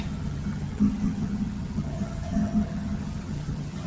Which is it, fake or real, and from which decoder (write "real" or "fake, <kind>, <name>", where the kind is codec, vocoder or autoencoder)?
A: fake, vocoder, HiFi-GAN